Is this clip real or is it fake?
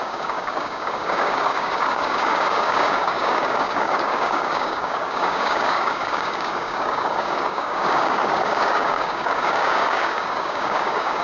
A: fake